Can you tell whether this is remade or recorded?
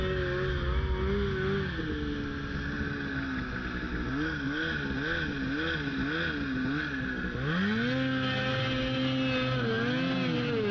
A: recorded